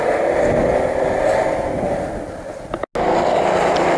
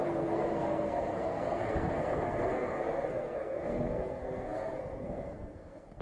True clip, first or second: first